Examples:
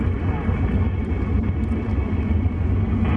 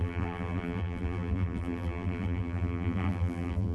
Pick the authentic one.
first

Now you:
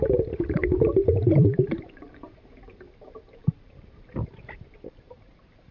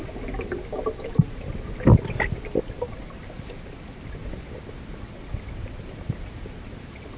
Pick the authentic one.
second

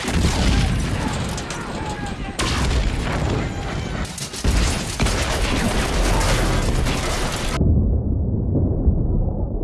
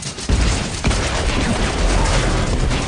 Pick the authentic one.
first